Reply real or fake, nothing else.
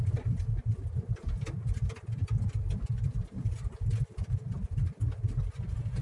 real